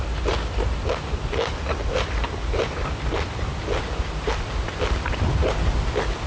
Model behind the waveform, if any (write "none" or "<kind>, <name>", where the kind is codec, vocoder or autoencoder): none